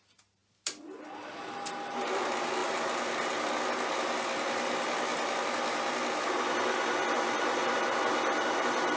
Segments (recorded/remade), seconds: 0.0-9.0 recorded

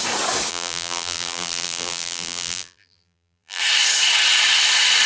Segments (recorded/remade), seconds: 0.0-0.5 recorded; 0.5-3.6 remade; 3.6-5.1 recorded

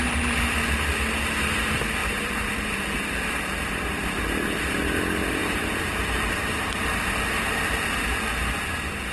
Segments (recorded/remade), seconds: 0.0-2.0 recorded; 2.0-5.0 remade; 5.0-5.4 recorded; 5.4-7.6 remade; 7.6-9.1 recorded

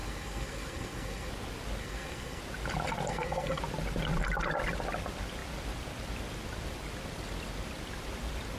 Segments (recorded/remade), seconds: 0.0-1.3 remade; 1.3-1.8 recorded; 1.8-2.4 remade; 2.4-3.1 recorded; 3.1-3.6 remade; 3.6-8.6 recorded

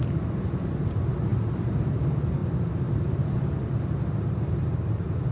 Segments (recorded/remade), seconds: 0.0-5.3 recorded

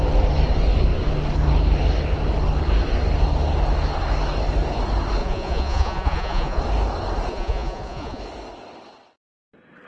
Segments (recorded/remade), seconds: 0.0-5.2 recorded; 5.2-6.6 remade; 6.6-7.3 recorded; 7.3-8.2 remade; 8.2-9.9 recorded